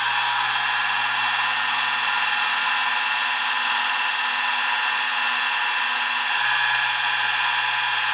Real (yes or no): yes